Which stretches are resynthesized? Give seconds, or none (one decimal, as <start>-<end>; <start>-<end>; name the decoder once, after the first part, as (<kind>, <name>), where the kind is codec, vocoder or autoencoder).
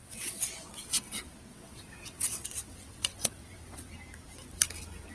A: 0.0-0.7 (vocoder, WaveNeXt); 1.5-3.9